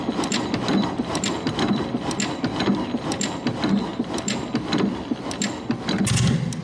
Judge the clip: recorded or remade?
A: recorded